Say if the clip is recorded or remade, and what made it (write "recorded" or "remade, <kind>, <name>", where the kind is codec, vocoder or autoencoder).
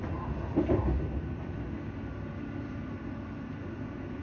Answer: recorded